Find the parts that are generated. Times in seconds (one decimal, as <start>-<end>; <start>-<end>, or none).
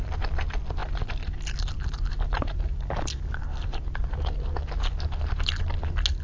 none